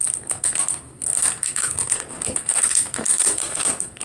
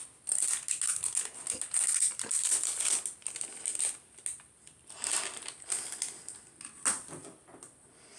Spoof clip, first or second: first